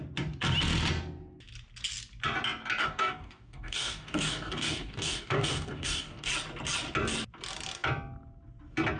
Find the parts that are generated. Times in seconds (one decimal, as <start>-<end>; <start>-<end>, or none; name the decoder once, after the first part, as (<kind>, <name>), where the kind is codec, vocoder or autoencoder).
2.8-6.3 (codec, DAC)